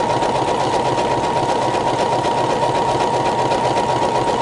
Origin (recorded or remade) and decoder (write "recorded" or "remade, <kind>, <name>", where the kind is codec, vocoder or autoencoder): recorded